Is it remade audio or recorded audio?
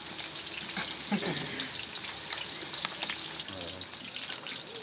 recorded